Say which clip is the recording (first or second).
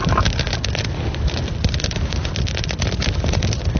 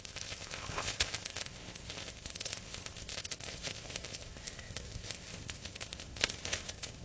first